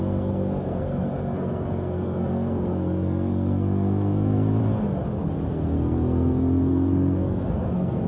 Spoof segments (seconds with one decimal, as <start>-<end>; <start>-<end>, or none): 0.0-4.6; 5.5-8.1